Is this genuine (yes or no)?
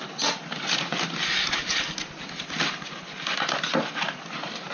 yes